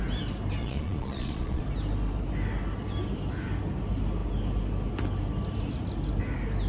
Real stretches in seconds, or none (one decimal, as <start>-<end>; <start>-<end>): 0.0-0.6; 1.6-6.7